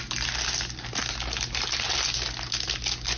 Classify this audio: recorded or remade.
recorded